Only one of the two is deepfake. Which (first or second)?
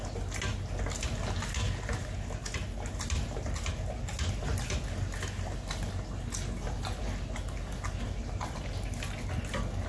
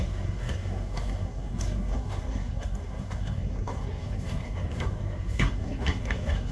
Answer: second